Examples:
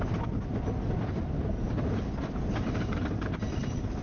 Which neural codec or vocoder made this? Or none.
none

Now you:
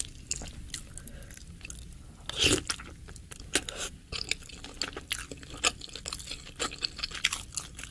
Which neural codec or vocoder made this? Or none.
none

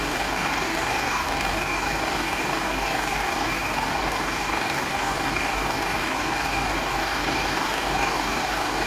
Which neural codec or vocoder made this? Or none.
codec, DAC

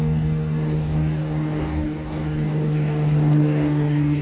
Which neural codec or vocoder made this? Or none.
codec, DAC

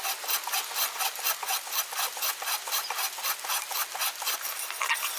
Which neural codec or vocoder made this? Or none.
none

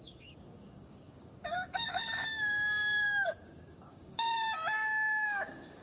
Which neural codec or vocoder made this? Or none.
codec, DAC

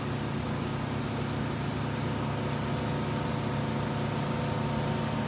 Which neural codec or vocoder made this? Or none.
none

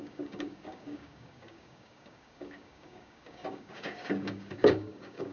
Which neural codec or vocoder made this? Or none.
codec, DAC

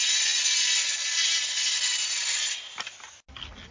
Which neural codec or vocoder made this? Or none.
none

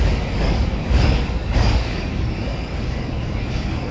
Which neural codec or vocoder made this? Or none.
codec, DAC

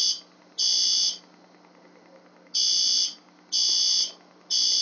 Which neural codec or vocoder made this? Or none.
none